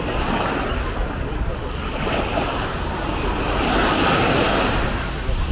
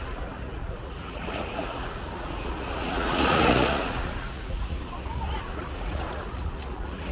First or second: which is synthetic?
second